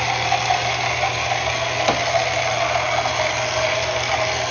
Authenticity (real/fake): real